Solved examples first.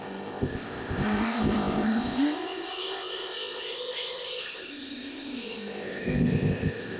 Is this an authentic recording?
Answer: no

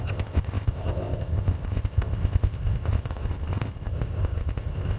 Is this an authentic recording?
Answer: no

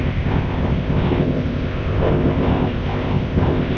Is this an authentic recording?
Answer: no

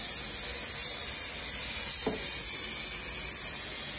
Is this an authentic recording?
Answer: yes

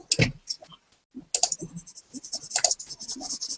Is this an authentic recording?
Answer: yes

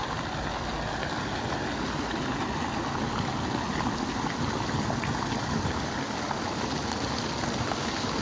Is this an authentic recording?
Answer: yes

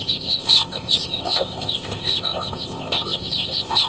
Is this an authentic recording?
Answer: no